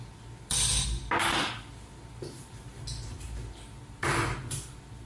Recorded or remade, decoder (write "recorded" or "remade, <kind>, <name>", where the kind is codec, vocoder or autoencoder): recorded